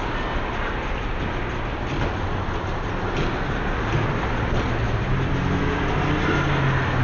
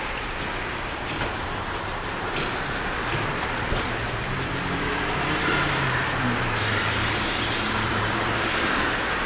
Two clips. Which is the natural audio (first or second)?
first